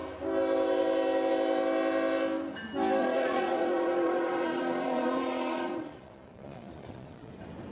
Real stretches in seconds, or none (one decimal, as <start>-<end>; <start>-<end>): 0.0-3.0; 7.3-7.7